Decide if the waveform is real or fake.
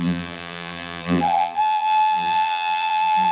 fake